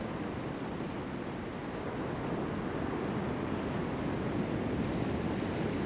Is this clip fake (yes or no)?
no